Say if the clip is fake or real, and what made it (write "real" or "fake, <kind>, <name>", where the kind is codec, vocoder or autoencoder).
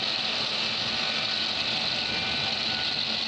real